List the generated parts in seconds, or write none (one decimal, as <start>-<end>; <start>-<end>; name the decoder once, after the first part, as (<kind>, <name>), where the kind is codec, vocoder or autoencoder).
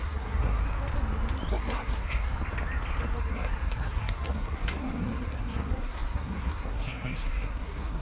0.0-0.6 (codec, SNAC); 1.5-2.3; 3.2-8.0